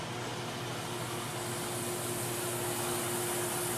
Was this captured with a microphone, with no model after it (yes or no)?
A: yes